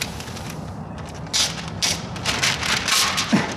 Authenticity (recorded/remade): recorded